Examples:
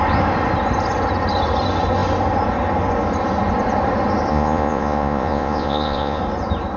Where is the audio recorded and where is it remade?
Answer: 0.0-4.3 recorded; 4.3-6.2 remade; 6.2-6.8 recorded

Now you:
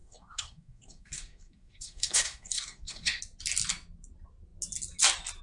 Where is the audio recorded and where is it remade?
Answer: 0.0-3.2 remade; 3.2-5.4 recorded

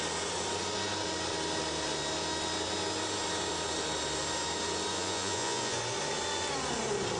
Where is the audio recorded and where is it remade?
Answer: 0.0-4.9 recorded; 4.9-5.8 remade; 5.8-7.2 recorded

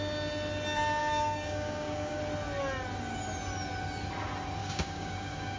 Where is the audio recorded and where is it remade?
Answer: 0.0-1.0 recorded; 1.0-2.2 remade; 2.2-4.6 recorded; 4.6-5.6 remade

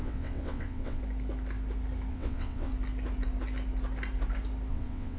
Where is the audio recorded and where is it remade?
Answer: 0.0-1.0 remade; 1.0-2.1 recorded; 2.1-2.7 remade; 2.7-4.7 recorded; 4.7-5.2 remade

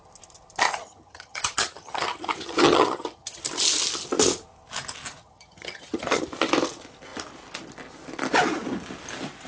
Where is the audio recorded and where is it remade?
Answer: 0.0-0.8 recorded; 0.8-3.4 remade; 3.4-5.2 recorded; 5.2-6.2 remade; 6.2-9.5 recorded